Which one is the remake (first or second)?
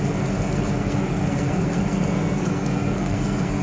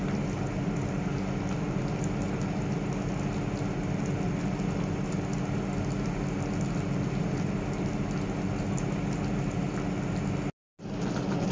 first